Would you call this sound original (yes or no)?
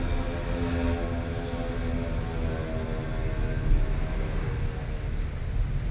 yes